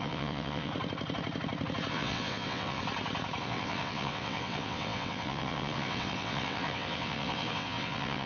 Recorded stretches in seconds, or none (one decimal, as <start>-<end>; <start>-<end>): 0.7-1.9; 2.8-3.4